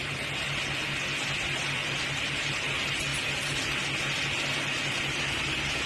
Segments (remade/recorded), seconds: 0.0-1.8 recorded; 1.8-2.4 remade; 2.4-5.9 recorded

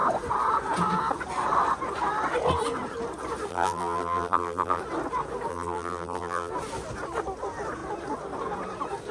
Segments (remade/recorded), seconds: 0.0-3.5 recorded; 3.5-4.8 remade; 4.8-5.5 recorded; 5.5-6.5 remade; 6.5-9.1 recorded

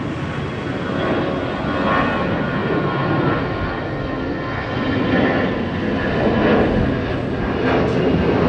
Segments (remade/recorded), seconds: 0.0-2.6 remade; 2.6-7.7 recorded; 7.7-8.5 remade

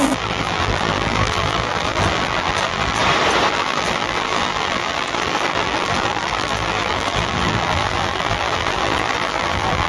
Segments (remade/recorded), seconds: 0.0-3.0 remade; 3.0-3.5 recorded; 3.5-9.9 remade

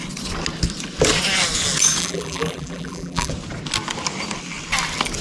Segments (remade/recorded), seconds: 0.0-2.0 recorded; 2.0-3.3 remade; 3.3-5.2 recorded

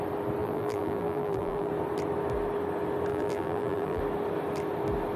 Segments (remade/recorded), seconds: 0.0-0.4 recorded; 0.4-1.7 remade; 1.7-3.1 recorded; 3.1-4.0 remade; 4.0-5.2 recorded

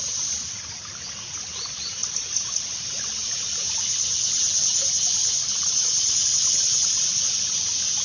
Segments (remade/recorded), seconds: 0.0-2.0 recorded; 2.0-2.7 remade; 2.7-3.6 recorded; 3.6-4.3 remade; 4.3-8.0 recorded